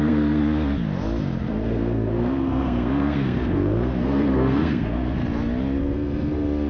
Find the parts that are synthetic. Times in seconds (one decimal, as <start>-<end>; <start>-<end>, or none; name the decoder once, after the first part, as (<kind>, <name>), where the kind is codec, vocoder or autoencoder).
0.0-0.4 (codec, SNAC); 1.5-5.2; 5.8-6.7